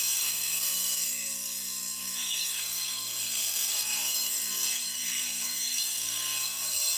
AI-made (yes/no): yes